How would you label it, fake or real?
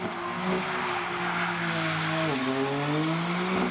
real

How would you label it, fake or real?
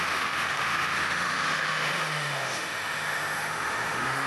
fake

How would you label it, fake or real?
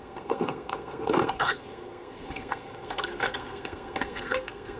fake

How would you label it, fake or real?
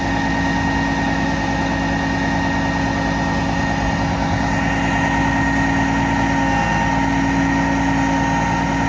real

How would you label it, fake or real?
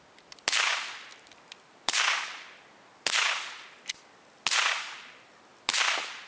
real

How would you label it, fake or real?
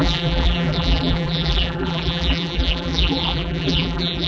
fake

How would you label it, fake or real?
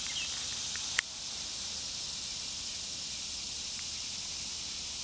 real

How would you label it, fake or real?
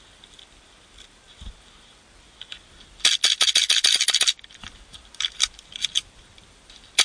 real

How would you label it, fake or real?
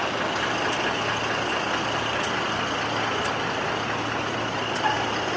real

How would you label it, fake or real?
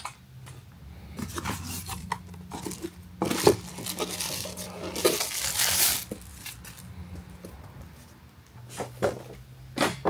real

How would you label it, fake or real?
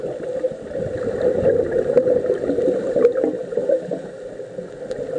real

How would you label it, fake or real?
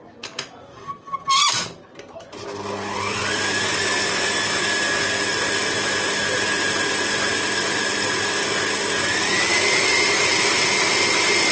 real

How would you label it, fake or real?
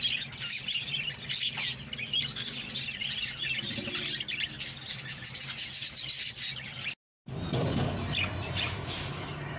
real